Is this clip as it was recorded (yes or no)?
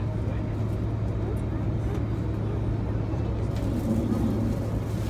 yes